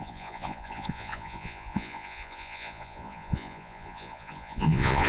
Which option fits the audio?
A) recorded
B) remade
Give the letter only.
B